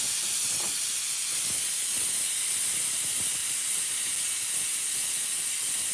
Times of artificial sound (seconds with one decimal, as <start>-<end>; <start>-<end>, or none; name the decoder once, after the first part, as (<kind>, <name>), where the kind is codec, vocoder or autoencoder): 3.4-4.1 (vocoder, BigVGAN v2)